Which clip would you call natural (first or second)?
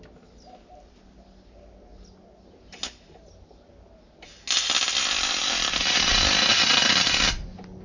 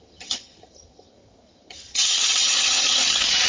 first